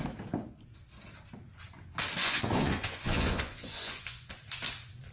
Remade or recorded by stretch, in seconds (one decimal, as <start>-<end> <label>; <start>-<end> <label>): 0.0-2.2 recorded; 2.2-4.3 remade; 4.3-5.1 recorded